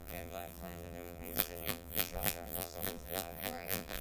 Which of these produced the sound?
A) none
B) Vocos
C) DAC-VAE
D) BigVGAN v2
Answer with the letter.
D